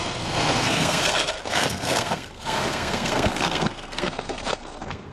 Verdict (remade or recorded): remade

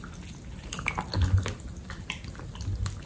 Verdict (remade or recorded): recorded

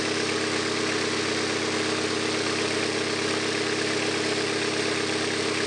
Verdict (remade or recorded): recorded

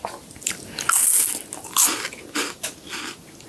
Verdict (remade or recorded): recorded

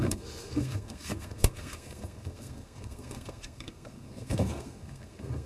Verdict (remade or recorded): remade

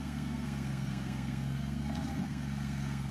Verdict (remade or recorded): remade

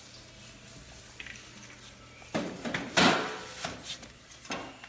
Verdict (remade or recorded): recorded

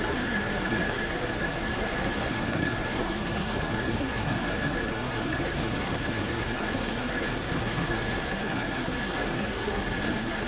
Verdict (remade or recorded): remade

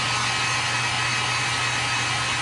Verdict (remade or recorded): recorded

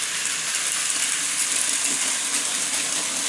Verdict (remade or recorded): recorded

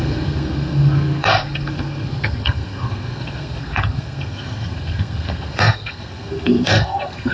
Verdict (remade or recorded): remade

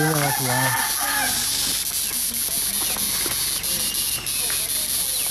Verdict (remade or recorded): recorded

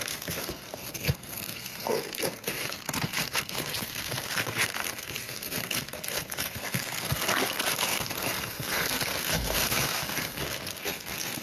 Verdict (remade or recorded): remade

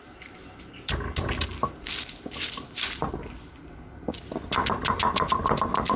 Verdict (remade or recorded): recorded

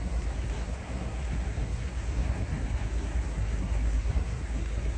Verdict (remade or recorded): remade